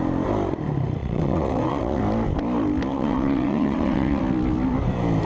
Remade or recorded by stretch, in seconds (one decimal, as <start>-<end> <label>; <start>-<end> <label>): 0.0-1.0 recorded; 1.0-2.0 remade; 2.0-2.9 recorded; 2.9-4.2 remade; 4.2-5.3 recorded